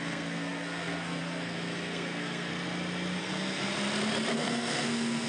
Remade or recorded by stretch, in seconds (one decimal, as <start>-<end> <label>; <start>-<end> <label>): 0.0-2.5 remade; 2.5-3.2 recorded; 3.2-3.7 remade; 3.7-4.3 recorded; 4.3-5.3 remade